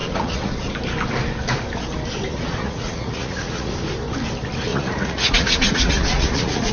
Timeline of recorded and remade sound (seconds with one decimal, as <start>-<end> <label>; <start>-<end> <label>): 0.0-0.5 remade; 0.5-2.3 recorded; 2.3-3.7 remade; 3.7-4.7 recorded; 4.7-6.7 remade